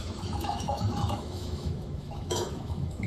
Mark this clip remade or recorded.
remade